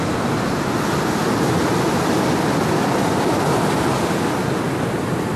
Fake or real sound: real